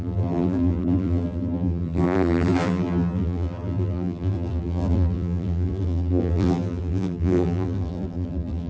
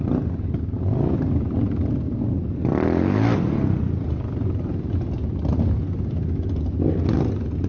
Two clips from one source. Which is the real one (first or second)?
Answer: second